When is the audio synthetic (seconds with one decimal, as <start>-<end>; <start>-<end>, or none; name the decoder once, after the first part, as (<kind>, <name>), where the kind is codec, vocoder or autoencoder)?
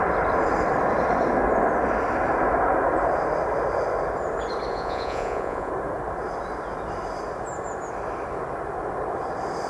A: 4.7-5.7 (vocoder, Vocos)